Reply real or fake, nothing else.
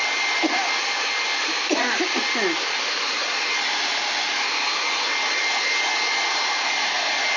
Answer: real